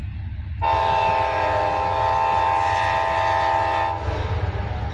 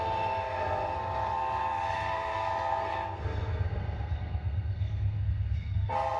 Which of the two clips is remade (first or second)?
second